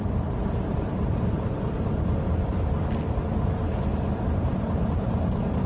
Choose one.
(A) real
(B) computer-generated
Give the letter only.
A